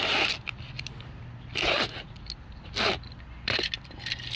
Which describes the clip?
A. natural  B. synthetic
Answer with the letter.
A